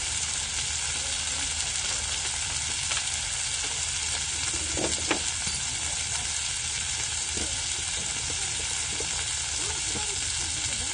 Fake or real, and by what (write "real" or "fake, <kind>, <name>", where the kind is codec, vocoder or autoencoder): real